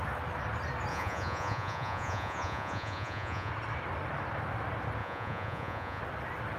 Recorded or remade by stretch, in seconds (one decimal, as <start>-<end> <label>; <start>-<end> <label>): 0.0-0.9 recorded; 0.9-3.5 remade; 3.5-5.0 recorded; 5.0-6.0 remade; 6.0-6.6 recorded

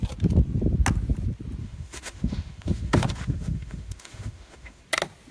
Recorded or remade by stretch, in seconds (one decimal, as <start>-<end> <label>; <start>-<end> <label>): 0.0-1.6 recorded; 1.6-4.8 remade; 4.8-5.3 recorded

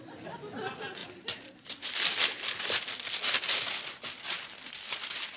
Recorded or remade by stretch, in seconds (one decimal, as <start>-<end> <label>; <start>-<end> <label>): 0.0-1.0 recorded; 1.0-2.6 remade; 2.6-5.4 recorded